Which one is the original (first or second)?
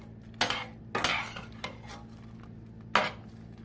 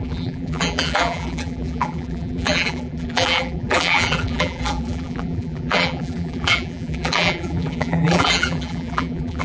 first